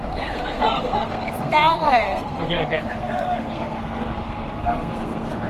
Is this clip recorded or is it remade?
remade